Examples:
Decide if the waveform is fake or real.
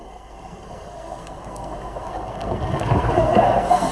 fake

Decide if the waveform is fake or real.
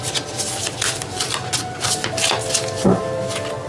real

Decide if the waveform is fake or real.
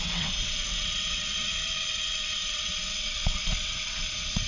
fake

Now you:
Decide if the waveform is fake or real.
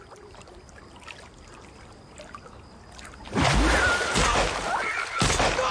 real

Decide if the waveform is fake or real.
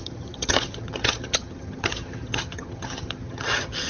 fake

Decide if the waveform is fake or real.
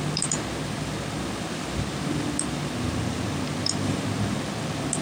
fake